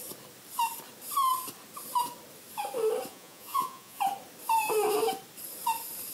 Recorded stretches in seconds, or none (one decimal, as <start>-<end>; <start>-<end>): 0.0-3.1; 4.0-6.1